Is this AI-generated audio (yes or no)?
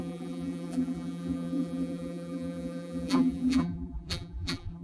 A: yes